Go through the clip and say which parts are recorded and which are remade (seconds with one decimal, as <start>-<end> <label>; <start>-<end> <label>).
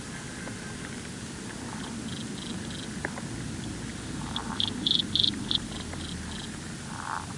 0.0-3.9 recorded; 3.9-6.1 remade; 6.1-7.4 recorded